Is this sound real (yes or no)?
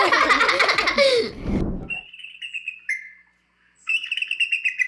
yes